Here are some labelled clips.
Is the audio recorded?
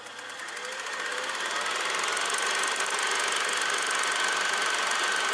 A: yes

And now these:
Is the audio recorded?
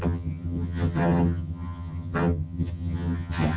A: no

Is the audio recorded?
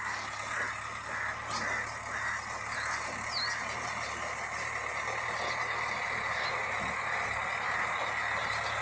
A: yes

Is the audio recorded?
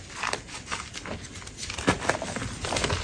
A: yes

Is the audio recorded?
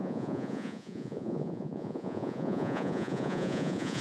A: no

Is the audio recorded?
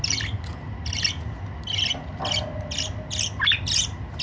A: yes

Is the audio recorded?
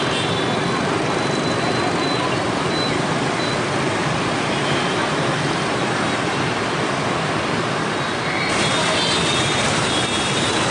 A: yes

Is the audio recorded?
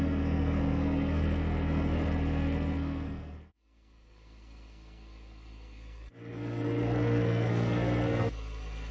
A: no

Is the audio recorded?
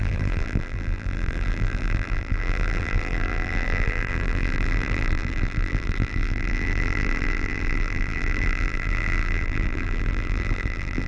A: no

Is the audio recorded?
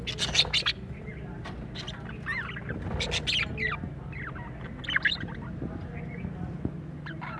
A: yes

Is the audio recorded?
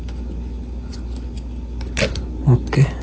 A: yes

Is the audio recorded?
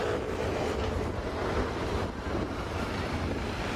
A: yes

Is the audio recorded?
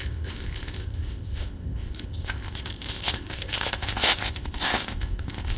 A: no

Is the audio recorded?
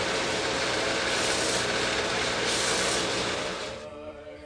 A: no